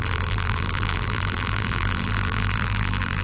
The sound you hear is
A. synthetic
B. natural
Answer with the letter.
A